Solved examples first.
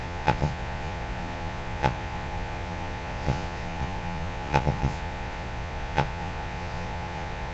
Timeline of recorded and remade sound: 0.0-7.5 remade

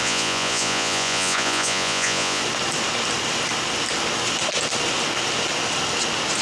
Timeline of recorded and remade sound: 0.0-2.4 remade; 2.4-6.4 recorded

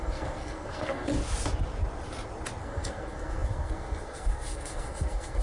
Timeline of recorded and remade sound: 0.0-1.1 remade; 1.1-2.6 recorded; 2.6-5.4 remade

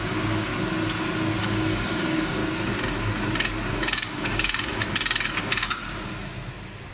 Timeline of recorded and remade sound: 0.0-0.5 remade; 0.5-1.4 recorded; 1.4-2.4 remade; 2.4-3.7 recorded; 3.7-5.8 remade; 5.8-6.9 recorded

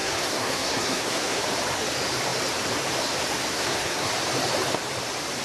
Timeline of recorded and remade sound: 0.0-1.4 remade; 1.4-3.5 recorded; 3.5-4.1 remade; 4.1-5.4 recorded

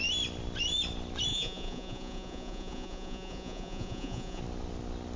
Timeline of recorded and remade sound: 0.0-1.3 recorded; 1.3-4.4 remade; 4.4-5.2 recorded

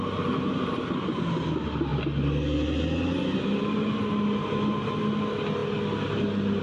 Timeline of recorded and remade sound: 0.0-6.6 recorded

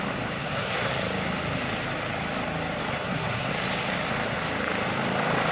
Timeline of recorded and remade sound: 0.0-0.4 recorded; 0.4-0.9 remade; 0.9-2.9 recorded; 2.9-3.5 remade; 3.5-5.5 recorded